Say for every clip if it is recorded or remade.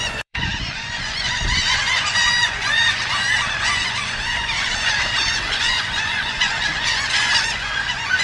remade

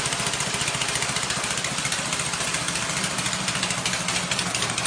recorded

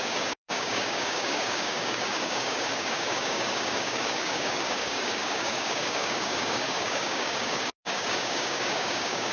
remade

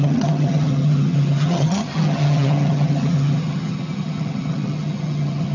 remade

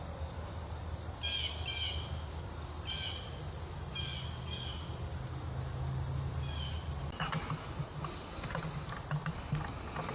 recorded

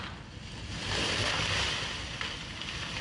recorded